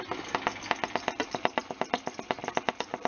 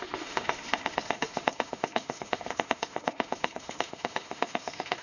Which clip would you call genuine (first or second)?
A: first